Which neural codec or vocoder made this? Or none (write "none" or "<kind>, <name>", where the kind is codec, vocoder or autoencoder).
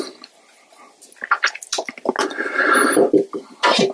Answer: none